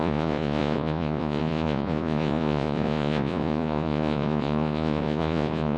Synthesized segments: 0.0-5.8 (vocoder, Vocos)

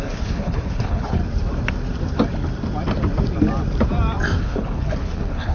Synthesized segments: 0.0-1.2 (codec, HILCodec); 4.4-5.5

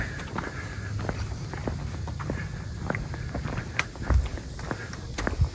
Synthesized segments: none